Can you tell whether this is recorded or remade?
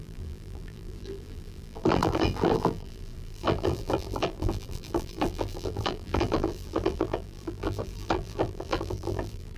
remade